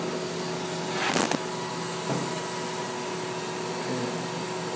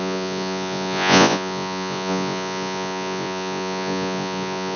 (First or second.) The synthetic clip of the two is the second